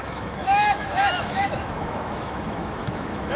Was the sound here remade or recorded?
remade